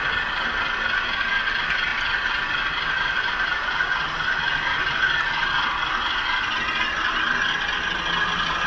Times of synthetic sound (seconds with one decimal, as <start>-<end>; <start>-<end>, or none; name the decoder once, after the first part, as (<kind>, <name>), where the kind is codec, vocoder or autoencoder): none

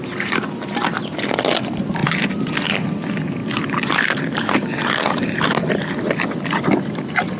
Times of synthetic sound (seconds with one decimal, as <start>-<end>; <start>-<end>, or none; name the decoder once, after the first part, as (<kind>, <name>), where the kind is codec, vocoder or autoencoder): none